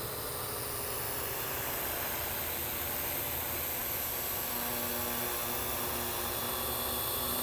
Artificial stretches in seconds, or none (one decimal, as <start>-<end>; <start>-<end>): none